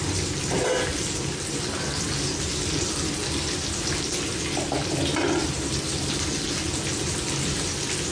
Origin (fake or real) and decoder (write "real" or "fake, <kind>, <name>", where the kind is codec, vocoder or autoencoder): real